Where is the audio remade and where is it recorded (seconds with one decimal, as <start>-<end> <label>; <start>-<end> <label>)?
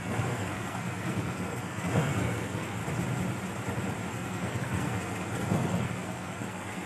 0.0-2.8 remade; 2.8-4.1 recorded; 4.1-6.9 remade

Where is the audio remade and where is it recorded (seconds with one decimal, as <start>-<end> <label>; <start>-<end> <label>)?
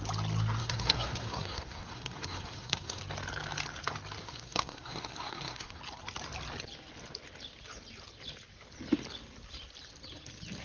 0.0-0.6 recorded; 0.6-3.0 remade; 3.0-4.2 recorded; 4.2-5.8 remade; 5.8-10.6 recorded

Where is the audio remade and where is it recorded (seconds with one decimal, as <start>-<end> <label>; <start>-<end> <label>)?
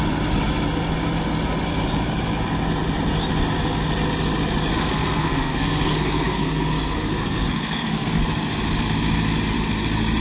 0.0-4.7 recorded; 4.7-8.2 remade; 8.2-10.2 recorded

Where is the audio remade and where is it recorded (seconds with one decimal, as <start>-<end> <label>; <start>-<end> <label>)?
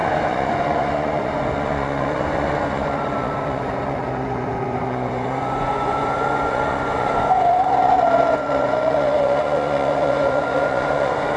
0.0-11.4 remade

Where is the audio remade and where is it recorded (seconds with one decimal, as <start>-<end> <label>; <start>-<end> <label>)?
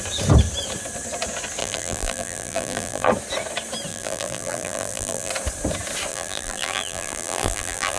0.0-1.6 recorded; 1.6-3.1 remade; 3.1-3.9 recorded; 3.9-5.3 remade; 5.3-6.1 recorded; 6.1-8.0 remade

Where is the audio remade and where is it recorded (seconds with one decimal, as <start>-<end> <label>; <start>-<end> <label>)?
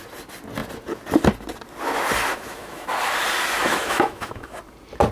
0.0-2.3 recorded; 2.3-2.9 remade; 2.9-3.6 recorded; 3.6-4.6 remade; 4.6-5.1 recorded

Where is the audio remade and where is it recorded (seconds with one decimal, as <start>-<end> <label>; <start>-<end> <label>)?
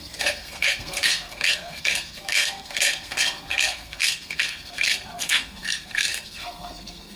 0.0-7.2 remade